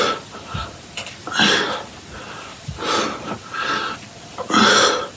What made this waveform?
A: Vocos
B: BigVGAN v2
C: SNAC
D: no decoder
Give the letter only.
D